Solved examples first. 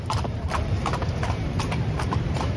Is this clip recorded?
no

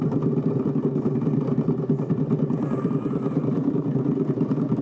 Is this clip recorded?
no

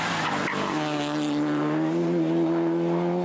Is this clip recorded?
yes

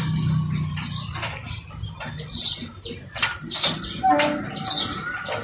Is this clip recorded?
yes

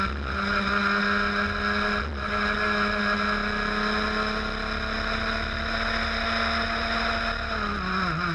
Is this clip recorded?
yes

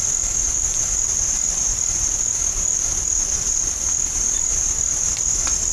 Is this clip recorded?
no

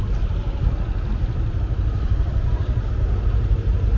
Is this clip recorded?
yes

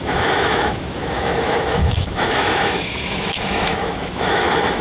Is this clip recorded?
no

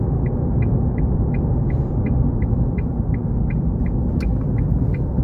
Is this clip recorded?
yes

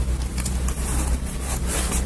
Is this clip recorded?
yes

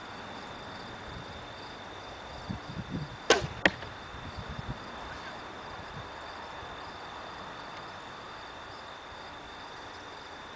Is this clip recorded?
yes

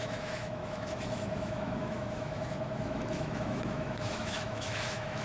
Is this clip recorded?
no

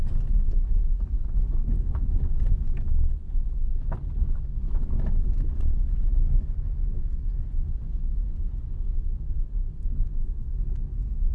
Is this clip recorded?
yes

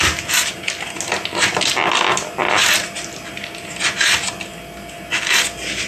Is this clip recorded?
yes